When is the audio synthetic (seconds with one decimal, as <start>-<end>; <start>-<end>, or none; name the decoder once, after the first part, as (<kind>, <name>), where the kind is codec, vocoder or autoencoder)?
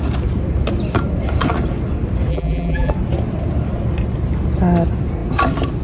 2.3-2.9 (vocoder, BigVGAN v2)